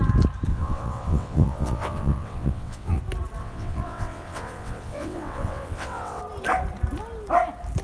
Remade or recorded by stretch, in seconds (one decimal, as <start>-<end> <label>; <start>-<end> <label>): 0.0-0.5 recorded; 0.5-3.0 remade; 3.0-3.4 recorded; 3.4-6.2 remade; 6.2-7.8 recorded